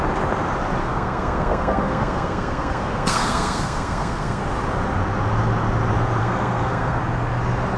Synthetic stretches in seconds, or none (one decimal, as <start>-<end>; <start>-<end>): 0.8-4.4; 6.2-7.0